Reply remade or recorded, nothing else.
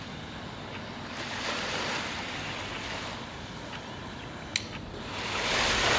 recorded